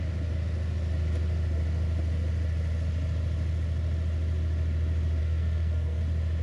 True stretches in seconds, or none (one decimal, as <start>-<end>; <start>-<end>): 0.0-5.2; 6.0-6.4